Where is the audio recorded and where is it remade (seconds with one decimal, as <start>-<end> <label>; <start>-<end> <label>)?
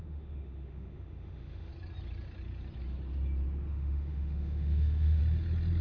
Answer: 0.0-1.7 remade; 1.7-3.7 recorded; 3.7-5.2 remade; 5.2-5.8 recorded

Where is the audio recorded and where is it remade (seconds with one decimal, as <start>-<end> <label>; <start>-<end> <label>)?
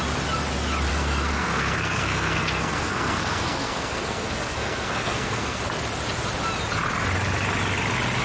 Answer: 0.0-0.9 recorded; 0.9-5.6 remade; 5.6-8.2 recorded